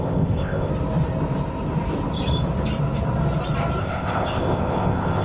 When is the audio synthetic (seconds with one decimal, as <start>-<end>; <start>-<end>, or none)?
0.0-0.7; 3.8-5.2